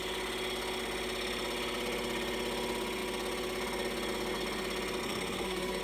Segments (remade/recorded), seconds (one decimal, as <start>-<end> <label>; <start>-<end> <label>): 0.0-5.0 recorded; 5.0-5.8 remade